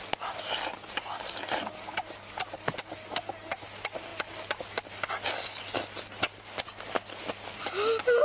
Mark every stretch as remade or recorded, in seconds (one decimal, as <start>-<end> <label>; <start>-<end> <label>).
0.0-8.2 recorded